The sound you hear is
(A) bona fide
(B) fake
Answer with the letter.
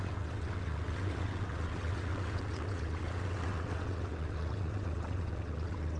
B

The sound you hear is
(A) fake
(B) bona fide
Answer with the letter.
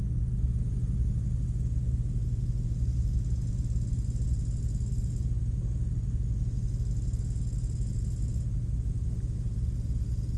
B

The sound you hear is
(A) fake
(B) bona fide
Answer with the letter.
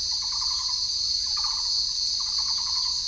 B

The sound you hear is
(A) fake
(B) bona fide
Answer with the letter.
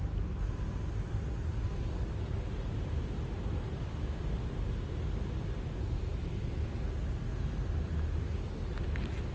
B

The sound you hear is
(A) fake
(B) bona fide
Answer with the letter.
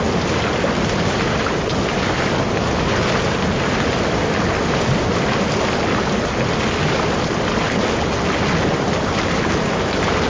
B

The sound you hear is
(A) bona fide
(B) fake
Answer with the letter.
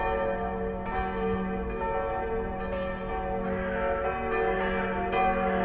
A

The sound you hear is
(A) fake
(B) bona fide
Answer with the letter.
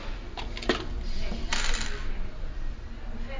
B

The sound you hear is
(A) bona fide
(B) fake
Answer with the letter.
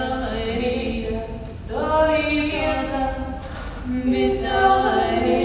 A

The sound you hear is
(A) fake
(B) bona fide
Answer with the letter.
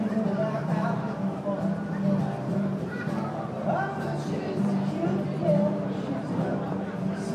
A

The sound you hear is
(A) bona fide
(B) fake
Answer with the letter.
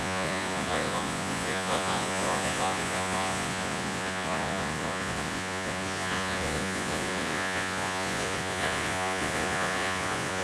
B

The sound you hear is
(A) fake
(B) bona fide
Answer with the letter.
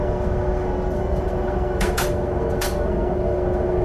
A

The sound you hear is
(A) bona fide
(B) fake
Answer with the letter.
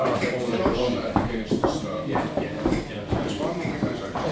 A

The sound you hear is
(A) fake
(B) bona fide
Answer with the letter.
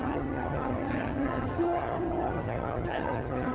A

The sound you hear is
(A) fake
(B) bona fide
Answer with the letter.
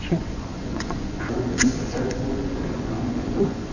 A